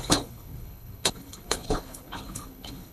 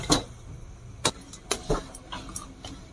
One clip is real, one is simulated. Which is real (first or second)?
second